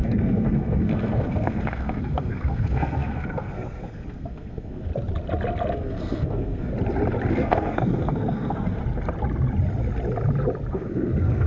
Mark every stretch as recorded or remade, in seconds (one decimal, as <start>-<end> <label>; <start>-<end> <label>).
0.0-4.9 remade; 4.9-5.7 recorded; 5.7-6.7 remade; 6.7-7.3 recorded; 7.3-8.8 remade; 8.8-10.7 recorded; 10.7-11.5 remade